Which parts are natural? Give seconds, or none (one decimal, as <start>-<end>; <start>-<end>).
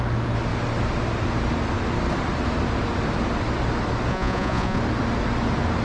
0.0-4.1; 4.8-5.8